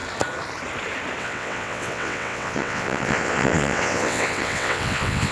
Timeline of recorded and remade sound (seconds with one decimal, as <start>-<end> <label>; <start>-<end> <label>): 0.0-1.2 recorded; 1.2-5.3 remade